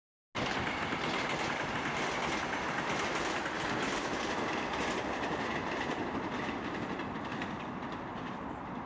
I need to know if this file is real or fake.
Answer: real